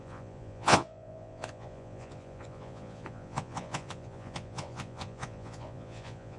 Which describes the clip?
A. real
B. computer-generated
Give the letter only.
B